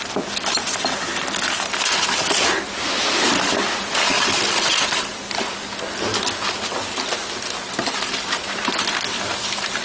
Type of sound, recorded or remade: recorded